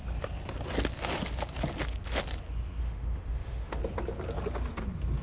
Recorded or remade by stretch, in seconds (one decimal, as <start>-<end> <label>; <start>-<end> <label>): 0.0-2.8 recorded; 2.8-3.8 remade; 3.8-5.2 recorded